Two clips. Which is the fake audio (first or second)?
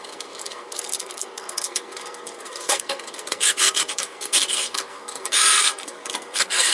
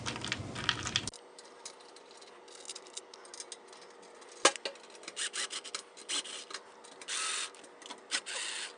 first